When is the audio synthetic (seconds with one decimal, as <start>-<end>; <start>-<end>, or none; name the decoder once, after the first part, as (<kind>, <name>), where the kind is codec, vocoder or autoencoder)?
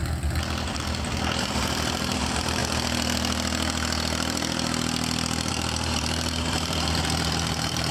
1.4-2.6 (vocoder, BigVGAN v2); 5.5-7.9